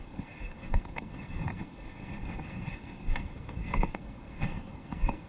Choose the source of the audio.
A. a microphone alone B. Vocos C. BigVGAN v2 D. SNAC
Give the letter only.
D